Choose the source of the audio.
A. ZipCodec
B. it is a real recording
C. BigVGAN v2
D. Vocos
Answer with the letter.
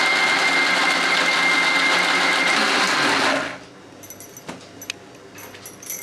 B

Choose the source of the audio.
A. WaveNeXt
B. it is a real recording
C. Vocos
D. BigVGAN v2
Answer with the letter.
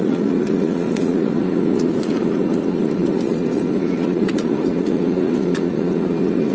C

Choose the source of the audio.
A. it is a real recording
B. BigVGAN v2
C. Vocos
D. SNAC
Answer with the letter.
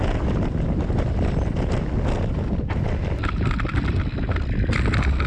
A